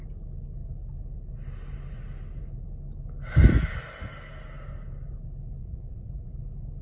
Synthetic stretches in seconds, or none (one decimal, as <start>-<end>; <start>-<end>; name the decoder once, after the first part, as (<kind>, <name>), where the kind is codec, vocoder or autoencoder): 5.6-6.3 (vocoder, Vocos)